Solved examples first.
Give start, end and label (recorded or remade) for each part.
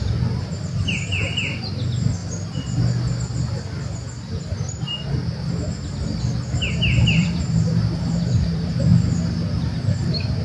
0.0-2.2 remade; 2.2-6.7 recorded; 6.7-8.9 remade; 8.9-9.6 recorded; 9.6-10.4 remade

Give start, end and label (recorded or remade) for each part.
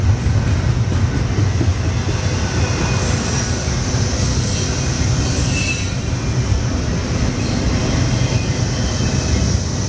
0.0-9.9 recorded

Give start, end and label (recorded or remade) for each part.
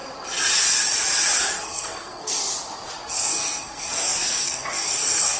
0.0-1.4 recorded; 1.4-2.4 remade; 2.4-3.1 recorded; 3.1-5.4 remade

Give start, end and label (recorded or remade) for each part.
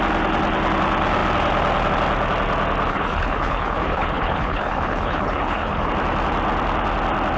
0.0-2.9 recorded; 2.9-5.9 remade; 5.9-7.4 recorded